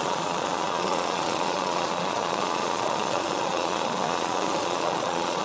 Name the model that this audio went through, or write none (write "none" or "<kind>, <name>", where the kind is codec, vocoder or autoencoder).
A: vocoder, Vocos